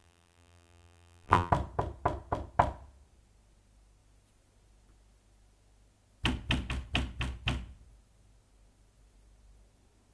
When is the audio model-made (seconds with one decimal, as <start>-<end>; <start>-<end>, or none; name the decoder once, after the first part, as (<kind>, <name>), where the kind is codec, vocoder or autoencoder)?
0.0-1.5 (vocoder, BigVGAN v2)